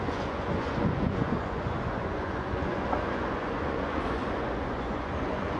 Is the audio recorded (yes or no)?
no